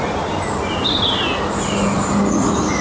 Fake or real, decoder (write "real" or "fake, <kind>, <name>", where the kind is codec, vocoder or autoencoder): real